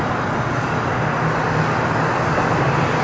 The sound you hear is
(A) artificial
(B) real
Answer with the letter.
B